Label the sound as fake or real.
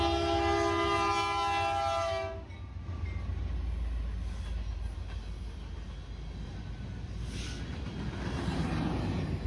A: real